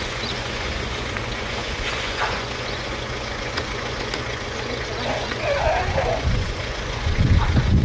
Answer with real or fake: fake